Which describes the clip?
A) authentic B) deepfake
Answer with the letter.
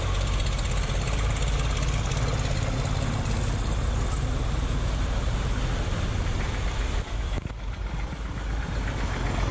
A